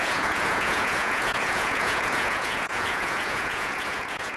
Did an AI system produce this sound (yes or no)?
yes